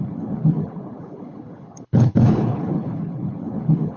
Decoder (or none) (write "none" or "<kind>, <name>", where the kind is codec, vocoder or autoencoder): codec, HILCodec